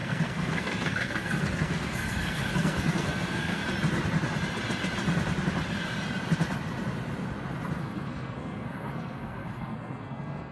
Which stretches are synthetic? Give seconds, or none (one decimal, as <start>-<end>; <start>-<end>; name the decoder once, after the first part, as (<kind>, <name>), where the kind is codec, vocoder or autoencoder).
0.0-3.6 (codec, SNAC); 7.8-10.5